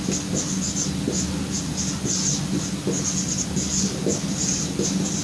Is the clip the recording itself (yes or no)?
yes